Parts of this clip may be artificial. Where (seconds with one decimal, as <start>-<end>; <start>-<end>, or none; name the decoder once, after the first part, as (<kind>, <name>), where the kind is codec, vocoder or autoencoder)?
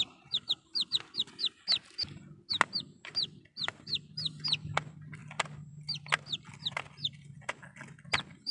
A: none